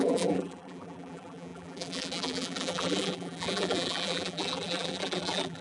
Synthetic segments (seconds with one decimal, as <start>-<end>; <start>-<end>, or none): 0.0-5.6